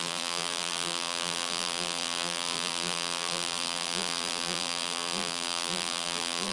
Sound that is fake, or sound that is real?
fake